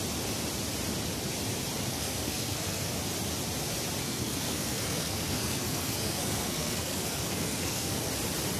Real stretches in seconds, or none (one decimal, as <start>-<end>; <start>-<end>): 0.0-1.9; 2.9-4.0; 8.1-8.6